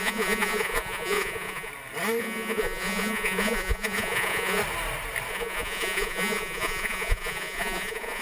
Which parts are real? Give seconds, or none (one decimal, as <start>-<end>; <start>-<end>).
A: 1.7-2.2; 4.6-5.3